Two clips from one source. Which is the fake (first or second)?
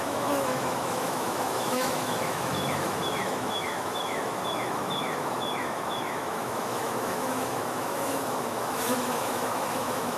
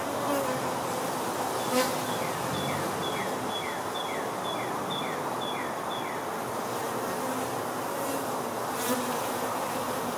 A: first